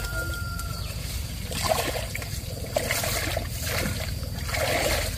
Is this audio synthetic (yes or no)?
no